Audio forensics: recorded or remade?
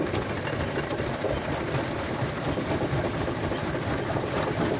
recorded